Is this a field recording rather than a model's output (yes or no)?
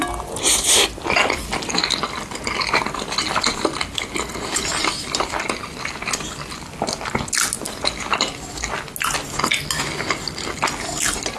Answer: yes